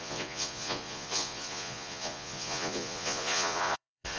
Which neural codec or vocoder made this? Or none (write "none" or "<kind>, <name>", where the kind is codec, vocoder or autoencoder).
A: vocoder, Vocos